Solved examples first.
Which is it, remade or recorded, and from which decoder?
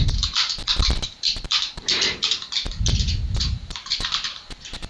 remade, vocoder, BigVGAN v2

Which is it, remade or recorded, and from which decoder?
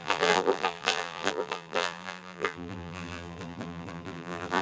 remade, vocoder, BigVGAN v2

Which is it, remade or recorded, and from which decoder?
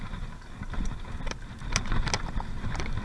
recorded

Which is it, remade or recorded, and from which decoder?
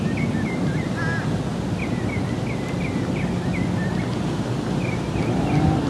recorded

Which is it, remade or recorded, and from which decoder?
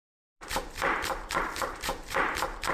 remade, vocoder, BigVGAN v2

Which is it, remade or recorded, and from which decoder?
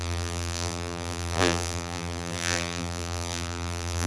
remade, vocoder, BigVGAN v2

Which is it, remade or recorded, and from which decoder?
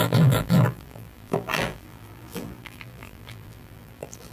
remade, vocoder, BigVGAN v2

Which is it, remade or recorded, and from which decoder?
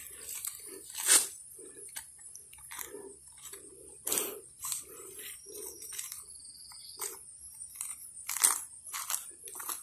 remade, vocoder, BigVGAN v2